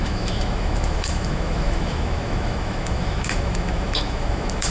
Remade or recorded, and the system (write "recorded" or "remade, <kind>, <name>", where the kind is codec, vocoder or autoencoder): remade, autoencoder, DAC-VAE